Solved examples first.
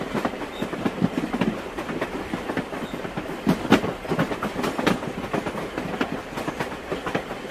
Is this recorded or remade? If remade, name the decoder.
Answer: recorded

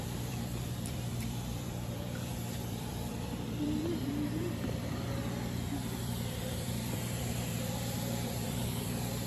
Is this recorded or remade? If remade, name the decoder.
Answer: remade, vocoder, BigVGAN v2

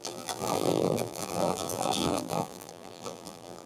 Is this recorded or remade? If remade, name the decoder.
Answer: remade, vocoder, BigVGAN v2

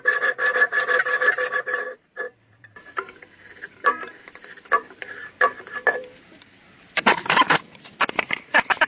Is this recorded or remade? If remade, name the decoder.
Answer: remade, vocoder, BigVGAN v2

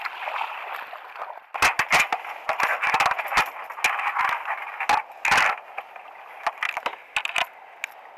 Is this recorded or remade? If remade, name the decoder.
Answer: recorded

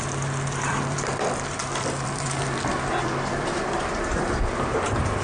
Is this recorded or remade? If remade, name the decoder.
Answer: remade, vocoder, BigVGAN v2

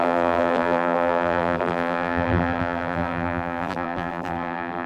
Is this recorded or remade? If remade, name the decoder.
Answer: remade, vocoder, BigVGAN v2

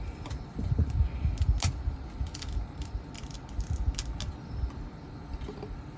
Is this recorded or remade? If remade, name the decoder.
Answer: recorded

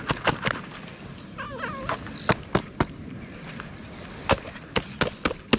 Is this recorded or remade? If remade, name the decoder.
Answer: recorded